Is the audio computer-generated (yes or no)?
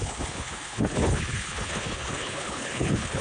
yes